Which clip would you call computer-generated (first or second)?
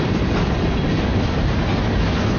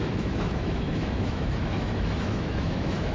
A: second